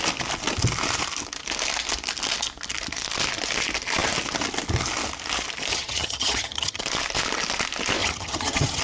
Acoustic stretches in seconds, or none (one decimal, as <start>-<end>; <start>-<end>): 0.0-5.7; 6.8-8.0